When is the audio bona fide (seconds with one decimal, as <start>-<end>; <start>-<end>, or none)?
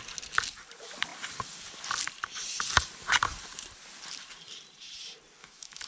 0.0-5.4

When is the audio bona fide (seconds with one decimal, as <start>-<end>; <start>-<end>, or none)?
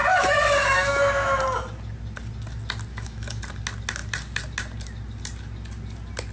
1.4-2.9; 3.4-6.3